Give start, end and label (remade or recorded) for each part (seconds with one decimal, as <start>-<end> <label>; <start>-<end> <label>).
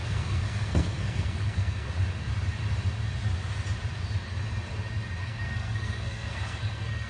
0.0-1.9 remade; 1.9-5.2 recorded; 5.2-7.1 remade